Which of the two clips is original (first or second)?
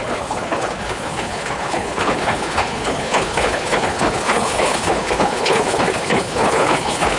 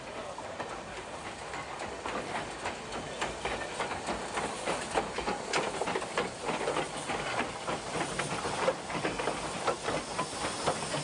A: second